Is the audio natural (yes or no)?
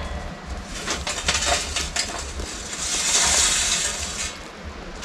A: yes